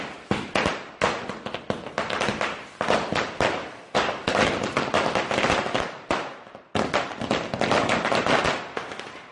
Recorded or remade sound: recorded